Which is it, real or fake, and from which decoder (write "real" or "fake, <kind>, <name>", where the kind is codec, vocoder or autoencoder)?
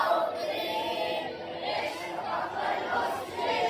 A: real